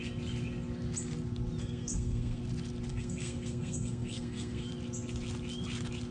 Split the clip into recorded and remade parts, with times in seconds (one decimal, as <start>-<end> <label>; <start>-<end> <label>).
0.0-1.6 recorded; 1.6-2.4 remade; 2.4-2.9 recorded; 2.9-4.7 remade; 4.7-6.1 recorded